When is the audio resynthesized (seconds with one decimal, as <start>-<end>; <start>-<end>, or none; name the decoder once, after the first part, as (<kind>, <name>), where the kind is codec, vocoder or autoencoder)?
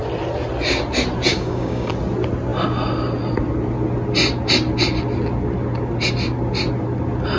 1.3-1.9 (codec, DAC)